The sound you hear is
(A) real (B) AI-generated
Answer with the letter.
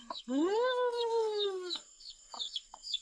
B